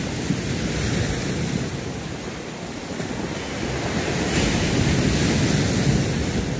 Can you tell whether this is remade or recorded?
recorded